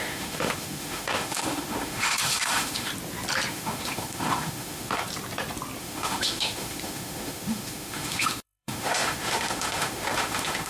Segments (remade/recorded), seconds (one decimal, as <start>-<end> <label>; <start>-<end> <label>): 0.0-2.9 remade; 2.9-3.5 recorded; 3.5-5.0 remade; 5.0-5.8 recorded; 5.8-10.7 remade